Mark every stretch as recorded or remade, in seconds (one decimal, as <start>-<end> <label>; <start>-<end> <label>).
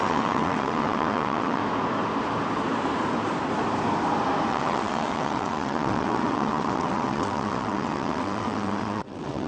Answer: 0.0-1.6 remade; 1.6-4.5 recorded; 4.5-9.5 remade